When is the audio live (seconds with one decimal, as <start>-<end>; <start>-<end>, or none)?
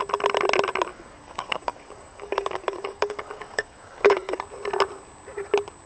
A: 0.0-0.9; 4.4-5.9